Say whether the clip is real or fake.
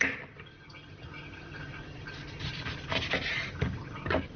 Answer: real